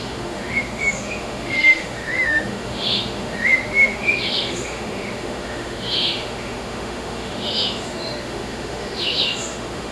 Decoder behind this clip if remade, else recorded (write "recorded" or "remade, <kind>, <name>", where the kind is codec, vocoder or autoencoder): remade, autoencoder, DAC-VAE